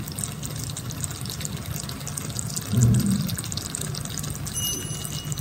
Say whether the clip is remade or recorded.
recorded